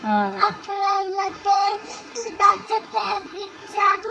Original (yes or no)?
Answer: no